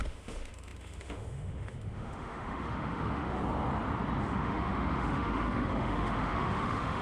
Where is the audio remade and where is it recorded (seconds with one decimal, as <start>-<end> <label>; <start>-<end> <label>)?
0.0-3.4 remade; 3.4-4.2 recorded; 4.2-7.0 remade

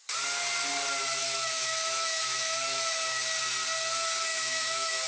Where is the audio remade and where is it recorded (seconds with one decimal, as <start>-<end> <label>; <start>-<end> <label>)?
0.0-1.2 recorded; 1.2-3.2 remade; 3.2-4.3 recorded; 4.3-5.1 remade

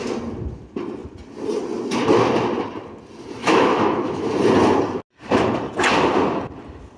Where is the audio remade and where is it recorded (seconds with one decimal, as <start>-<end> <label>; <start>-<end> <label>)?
0.0-3.4 recorded; 3.4-4.3 remade; 4.3-7.0 recorded

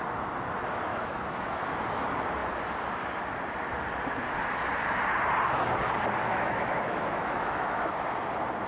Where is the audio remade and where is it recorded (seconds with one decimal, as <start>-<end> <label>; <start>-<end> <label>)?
0.0-0.9 recorded; 0.9-1.7 remade; 1.7-6.2 recorded; 6.2-7.9 remade; 7.9-8.7 recorded

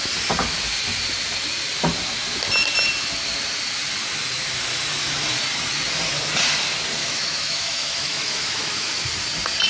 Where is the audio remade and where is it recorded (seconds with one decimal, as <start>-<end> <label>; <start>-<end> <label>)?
0.0-7.0 recorded; 7.0-9.0 remade; 9.0-9.7 recorded

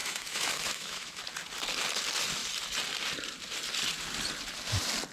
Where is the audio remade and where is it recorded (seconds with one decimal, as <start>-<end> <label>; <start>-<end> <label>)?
0.0-1.2 remade; 1.2-5.1 recorded

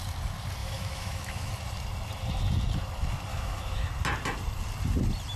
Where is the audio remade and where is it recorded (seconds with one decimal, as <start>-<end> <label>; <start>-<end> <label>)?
0.0-0.6 recorded; 0.6-1.5 remade; 1.5-3.3 recorded; 3.3-3.9 remade; 3.9-5.4 recorded

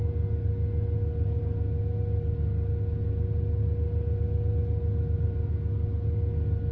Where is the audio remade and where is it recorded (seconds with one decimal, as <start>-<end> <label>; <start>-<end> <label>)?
0.0-6.7 recorded